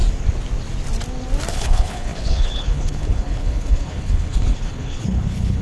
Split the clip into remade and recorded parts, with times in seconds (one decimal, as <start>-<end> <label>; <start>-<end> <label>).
0.0-1.5 recorded; 1.5-5.6 remade